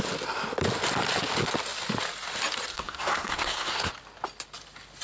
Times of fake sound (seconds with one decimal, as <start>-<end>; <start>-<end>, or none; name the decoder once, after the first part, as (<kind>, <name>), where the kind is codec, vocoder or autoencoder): 2.7-3.9 (codec, SNAC)